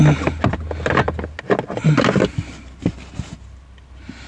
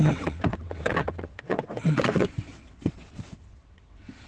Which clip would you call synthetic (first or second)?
second